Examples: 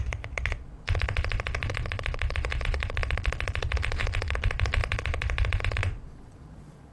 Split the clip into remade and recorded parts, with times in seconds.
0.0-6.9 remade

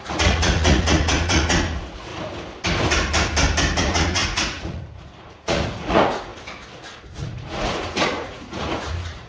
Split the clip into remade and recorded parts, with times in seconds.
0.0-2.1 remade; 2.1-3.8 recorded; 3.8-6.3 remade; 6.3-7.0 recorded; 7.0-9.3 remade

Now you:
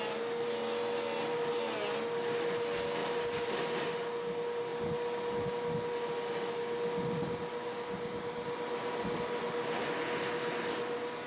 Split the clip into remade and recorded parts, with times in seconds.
0.0-11.3 recorded

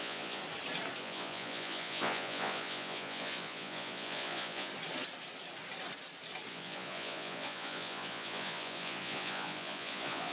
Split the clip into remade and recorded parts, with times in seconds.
0.0-0.4 remade; 0.4-1.0 recorded; 1.0-4.7 remade; 4.7-6.5 recorded; 6.5-10.3 remade

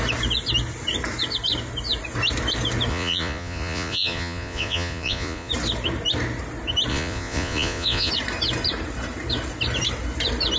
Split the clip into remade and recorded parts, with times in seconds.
0.0-2.9 recorded; 2.9-5.5 remade; 5.5-6.9 recorded; 6.9-8.1 remade; 8.1-10.6 recorded

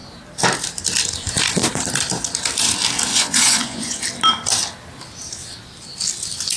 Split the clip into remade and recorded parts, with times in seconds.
0.0-3.1 recorded; 3.1-4.0 remade; 4.0-6.6 recorded

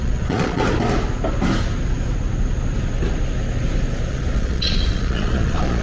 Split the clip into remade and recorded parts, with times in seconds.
0.0-0.6 remade; 0.6-4.1 recorded; 4.1-5.8 remade

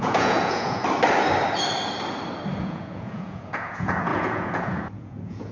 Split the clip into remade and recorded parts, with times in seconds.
0.0-0.8 remade; 0.8-2.6 recorded; 2.6-5.5 remade